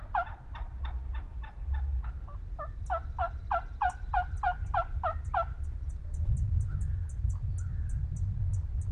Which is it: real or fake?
real